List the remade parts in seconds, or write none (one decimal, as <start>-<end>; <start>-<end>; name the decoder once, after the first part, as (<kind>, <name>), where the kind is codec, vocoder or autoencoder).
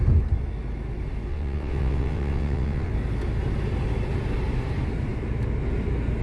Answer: 1.3-2.9 (vocoder, WaveNeXt)